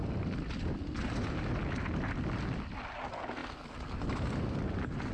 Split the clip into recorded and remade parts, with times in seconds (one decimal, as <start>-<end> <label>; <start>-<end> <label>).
0.0-5.1 recorded